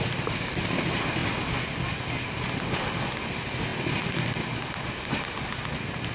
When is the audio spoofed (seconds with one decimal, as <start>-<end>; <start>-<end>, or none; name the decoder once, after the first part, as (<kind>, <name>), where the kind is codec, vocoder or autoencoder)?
none